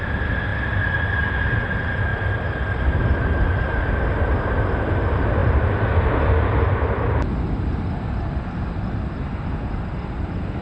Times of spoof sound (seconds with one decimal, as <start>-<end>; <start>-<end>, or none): none